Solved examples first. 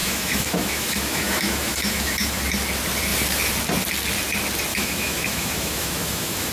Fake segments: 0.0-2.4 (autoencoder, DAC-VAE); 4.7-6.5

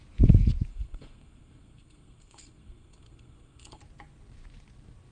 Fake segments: 0.7-3.8 (codec, SNAC)

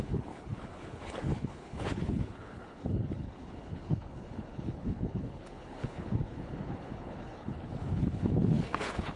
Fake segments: 0.0-9.2 (codec, HILCodec)